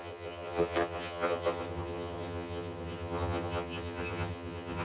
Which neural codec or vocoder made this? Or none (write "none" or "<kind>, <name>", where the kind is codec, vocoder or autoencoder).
vocoder, HiFi-GAN